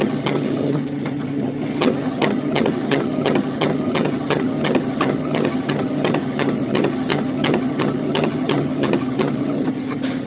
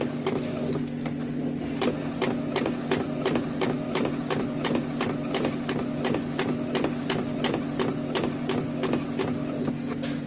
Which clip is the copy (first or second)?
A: first